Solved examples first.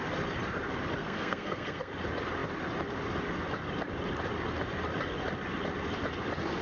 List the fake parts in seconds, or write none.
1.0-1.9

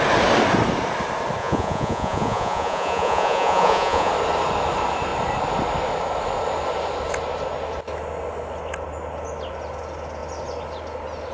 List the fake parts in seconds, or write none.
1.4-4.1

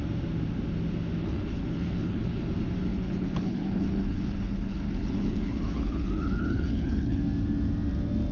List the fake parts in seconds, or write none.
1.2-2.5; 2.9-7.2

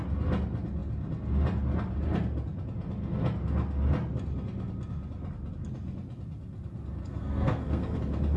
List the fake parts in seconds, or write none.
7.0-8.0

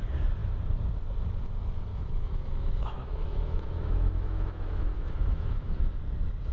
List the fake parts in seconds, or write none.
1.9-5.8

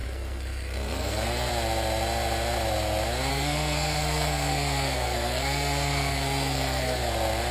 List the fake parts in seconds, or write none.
0.0-1.5; 3.3-7.0